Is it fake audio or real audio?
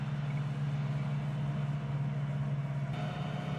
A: real